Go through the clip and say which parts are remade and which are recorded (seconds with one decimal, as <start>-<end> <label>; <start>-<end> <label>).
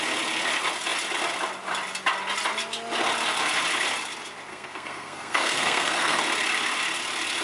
0.0-4.5 recorded; 4.5-6.2 remade; 6.2-7.4 recorded